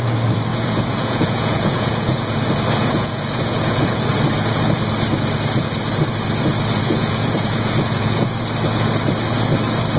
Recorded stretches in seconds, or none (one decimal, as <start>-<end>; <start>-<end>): 0.0-0.5; 2.3-2.8; 4.1-6.8; 8.3-10.0